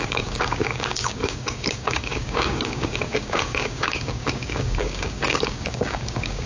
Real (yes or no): no